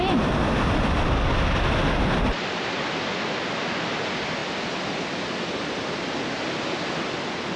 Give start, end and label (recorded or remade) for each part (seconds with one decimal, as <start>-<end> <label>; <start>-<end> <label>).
0.0-7.6 recorded